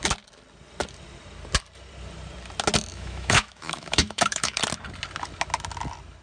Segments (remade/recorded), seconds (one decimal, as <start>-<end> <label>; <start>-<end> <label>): 0.0-2.9 recorded; 2.9-4.6 remade; 4.6-6.2 recorded